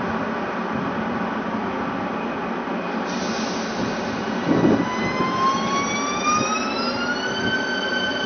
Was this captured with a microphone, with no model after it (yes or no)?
yes